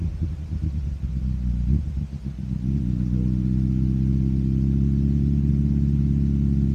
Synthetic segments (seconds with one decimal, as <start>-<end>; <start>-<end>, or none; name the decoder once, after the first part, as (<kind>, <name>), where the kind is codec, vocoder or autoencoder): none